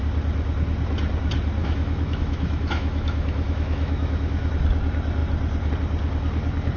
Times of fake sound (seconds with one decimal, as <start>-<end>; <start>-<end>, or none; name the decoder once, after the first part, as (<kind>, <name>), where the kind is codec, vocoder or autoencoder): 1.6-4.5 (autoencoder, DAC-VAE)